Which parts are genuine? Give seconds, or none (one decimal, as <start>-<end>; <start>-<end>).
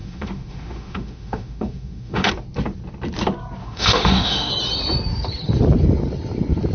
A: 2.3-3.6; 4.5-6.7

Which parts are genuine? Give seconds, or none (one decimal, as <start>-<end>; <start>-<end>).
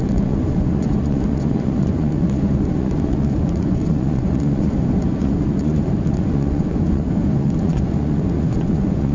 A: none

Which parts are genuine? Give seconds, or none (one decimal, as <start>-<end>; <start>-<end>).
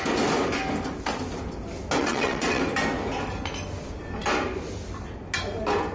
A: 0.0-2.0; 2.6-5.9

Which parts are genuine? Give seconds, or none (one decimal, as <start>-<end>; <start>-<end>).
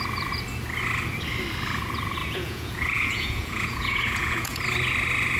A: 0.0-2.2; 4.6-5.4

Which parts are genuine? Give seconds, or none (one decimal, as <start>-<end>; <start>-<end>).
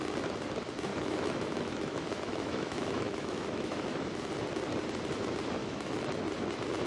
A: 0.0-0.9; 4.3-5.6; 6.2-6.9